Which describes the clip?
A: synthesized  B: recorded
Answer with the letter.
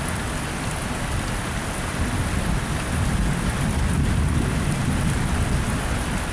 B